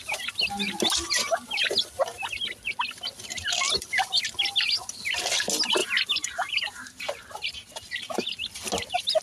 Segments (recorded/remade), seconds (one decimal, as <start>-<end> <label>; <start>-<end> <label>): 0.0-5.8 recorded; 5.8-7.7 remade; 7.7-9.2 recorded